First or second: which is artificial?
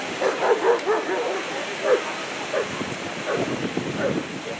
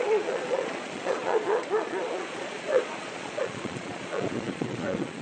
second